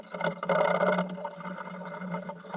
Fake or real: real